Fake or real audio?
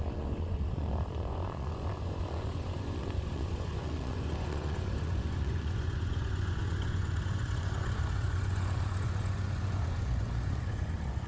fake